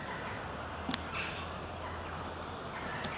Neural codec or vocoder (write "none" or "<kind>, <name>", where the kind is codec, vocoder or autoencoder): none